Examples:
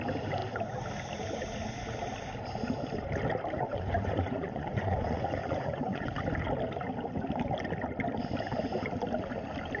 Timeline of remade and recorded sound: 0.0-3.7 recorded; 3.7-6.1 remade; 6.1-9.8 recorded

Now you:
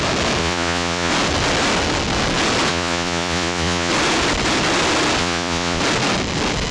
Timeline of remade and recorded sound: 0.0-0.4 recorded; 0.4-1.1 remade; 1.1-2.7 recorded; 2.7-3.9 remade; 3.9-5.2 recorded; 5.2-5.8 remade; 5.8-6.7 recorded

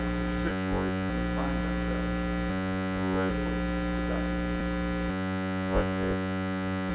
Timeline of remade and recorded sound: 0.0-0.5 recorded; 0.5-1.1 remade; 1.1-2.5 recorded; 2.5-3.3 remade; 3.3-5.1 recorded; 5.1-6.9 remade

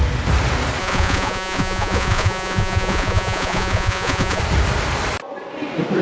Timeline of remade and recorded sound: 0.0-0.8 recorded; 0.8-4.4 remade; 4.4-6.0 recorded

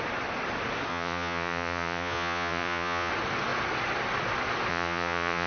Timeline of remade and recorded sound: 0.0-0.9 recorded; 0.9-3.1 remade; 3.1-4.7 recorded; 4.7-5.5 remade